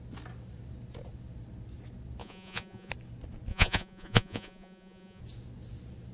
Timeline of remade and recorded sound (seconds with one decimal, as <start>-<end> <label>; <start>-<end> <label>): 0.0-2.2 recorded; 2.2-2.9 remade; 2.9-3.5 recorded; 3.5-5.2 remade; 5.2-6.1 recorded